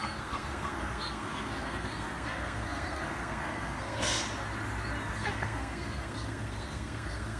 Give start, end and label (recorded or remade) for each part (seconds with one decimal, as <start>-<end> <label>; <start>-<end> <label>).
0.0-4.2 remade; 4.2-5.1 recorded; 5.1-7.4 remade

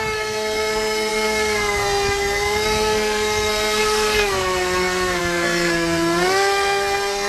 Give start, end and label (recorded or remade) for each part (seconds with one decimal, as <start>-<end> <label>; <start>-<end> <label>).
0.0-7.3 remade

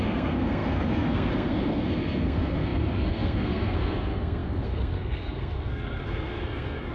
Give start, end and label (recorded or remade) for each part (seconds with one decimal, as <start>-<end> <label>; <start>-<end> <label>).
0.0-6.9 remade

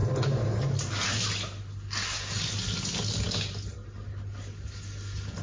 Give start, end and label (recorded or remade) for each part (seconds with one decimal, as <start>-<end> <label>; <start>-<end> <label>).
0.0-5.4 recorded

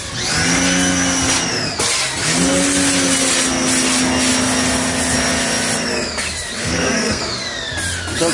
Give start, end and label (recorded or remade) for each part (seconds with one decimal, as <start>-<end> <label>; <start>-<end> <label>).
0.0-6.6 recorded; 6.6-7.2 remade; 7.2-8.3 recorded

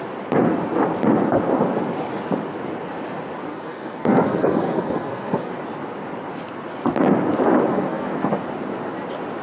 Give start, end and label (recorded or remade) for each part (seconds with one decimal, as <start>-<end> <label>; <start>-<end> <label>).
0.0-3.5 recorded; 3.5-5.5 remade; 5.5-7.7 recorded; 7.7-8.3 remade; 8.3-9.4 recorded

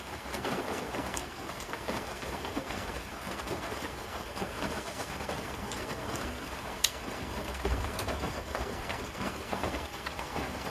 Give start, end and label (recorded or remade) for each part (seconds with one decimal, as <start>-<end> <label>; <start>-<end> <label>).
0.0-10.7 remade